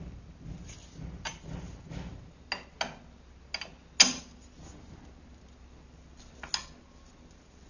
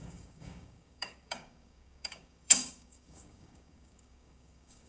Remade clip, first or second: second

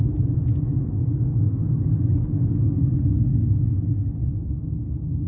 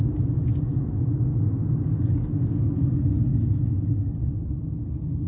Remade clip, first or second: first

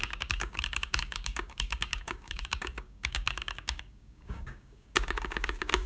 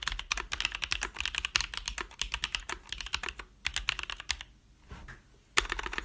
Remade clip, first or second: first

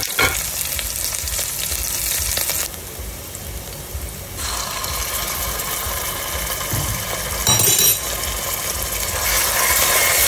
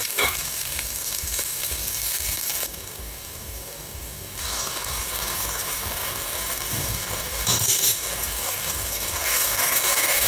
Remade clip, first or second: second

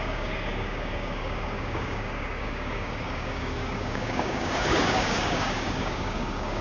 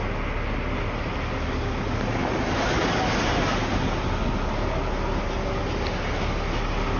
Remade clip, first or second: first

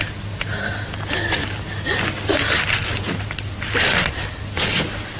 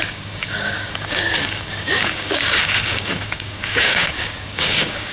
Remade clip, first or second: second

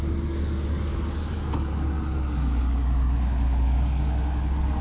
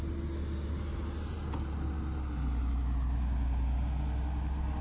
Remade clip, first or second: first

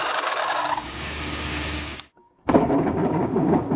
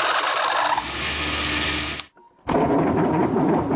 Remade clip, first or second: first